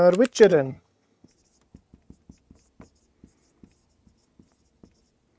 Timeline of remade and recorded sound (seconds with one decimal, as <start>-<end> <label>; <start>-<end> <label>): 0.0-0.5 recorded; 0.5-1.3 remade; 1.3-5.4 recorded